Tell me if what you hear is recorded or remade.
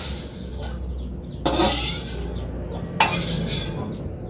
recorded